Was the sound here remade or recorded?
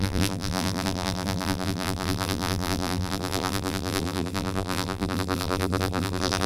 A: remade